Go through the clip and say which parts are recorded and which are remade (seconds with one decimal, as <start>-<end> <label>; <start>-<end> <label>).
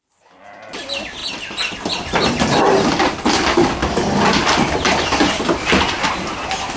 0.0-1.2 recorded; 1.2-3.2 remade; 3.2-3.8 recorded; 3.8-6.1 remade; 6.1-6.8 recorded